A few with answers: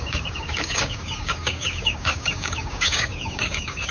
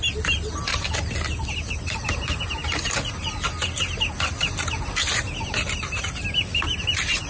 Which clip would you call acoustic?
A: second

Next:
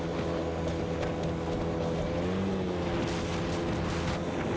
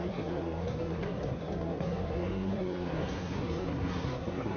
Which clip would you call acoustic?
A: first